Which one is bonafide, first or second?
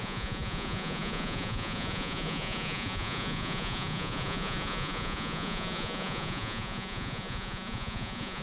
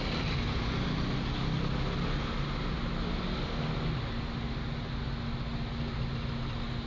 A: second